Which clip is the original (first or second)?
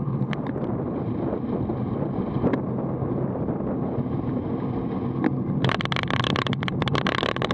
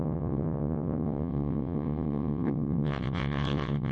first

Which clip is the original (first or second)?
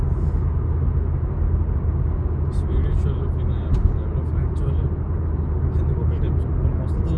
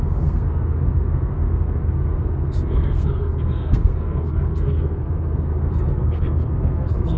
first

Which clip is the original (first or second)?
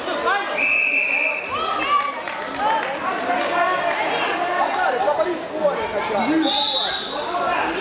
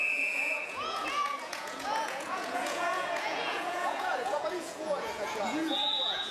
first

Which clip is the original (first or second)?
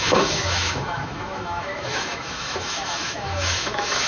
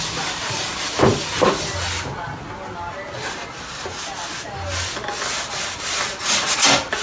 second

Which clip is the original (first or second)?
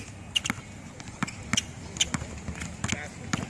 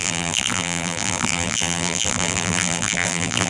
first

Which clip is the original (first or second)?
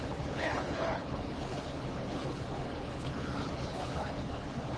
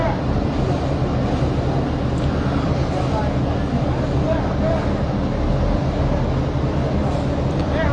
second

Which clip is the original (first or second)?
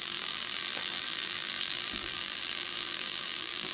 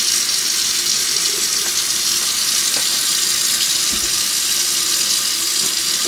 second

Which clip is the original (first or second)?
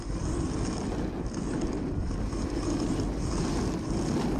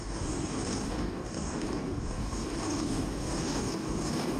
first